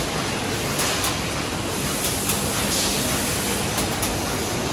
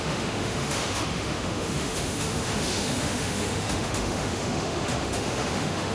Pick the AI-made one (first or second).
second